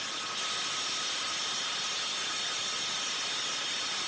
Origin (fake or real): real